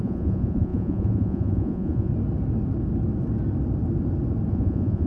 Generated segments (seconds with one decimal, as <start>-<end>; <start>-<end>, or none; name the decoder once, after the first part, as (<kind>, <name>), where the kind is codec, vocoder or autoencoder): 0.0-2.1 (vocoder, Vocos); 4.5-5.1